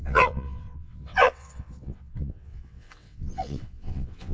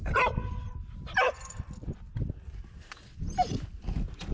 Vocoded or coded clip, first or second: first